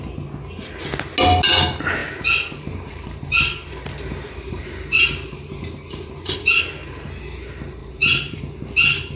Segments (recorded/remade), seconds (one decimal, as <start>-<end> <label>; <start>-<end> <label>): 0.0-2.0 recorded; 2.0-6.6 remade; 6.6-7.8 recorded; 7.8-8.4 remade; 8.4-9.2 recorded